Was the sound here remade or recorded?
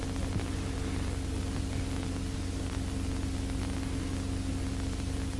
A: recorded